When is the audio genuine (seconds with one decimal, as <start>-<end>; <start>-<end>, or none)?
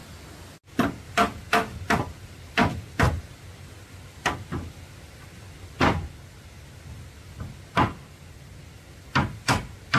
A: 0.0-10.0